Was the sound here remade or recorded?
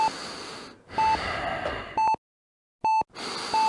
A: recorded